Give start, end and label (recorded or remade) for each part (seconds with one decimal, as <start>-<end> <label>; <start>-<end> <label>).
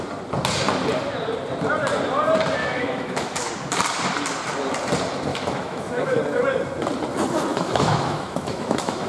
0.0-2.6 recorded; 2.6-3.5 remade; 3.5-5.3 recorded; 5.3-6.2 remade; 6.2-7.5 recorded; 7.5-9.1 remade